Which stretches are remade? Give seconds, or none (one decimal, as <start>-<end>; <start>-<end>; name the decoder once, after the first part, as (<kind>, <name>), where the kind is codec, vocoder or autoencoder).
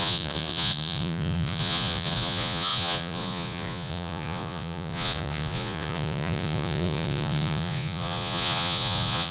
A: 0.0-9.3 (vocoder, Vocos)